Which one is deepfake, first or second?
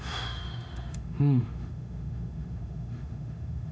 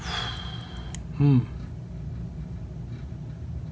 first